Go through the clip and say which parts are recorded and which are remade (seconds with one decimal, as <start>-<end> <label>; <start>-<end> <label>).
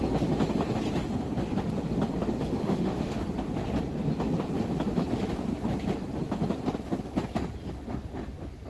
0.0-2.6 recorded; 2.6-3.2 remade; 3.2-8.7 recorded